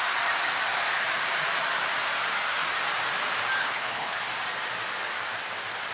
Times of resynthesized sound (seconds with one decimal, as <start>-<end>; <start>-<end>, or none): 3.6-4.2